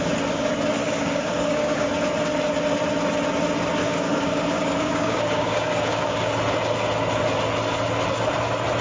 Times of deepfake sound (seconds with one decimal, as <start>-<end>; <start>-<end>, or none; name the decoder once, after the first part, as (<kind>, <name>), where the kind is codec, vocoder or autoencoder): 0.8-1.9 (codec, DAC); 3.8-6.3